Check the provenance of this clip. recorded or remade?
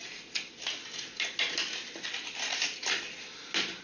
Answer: recorded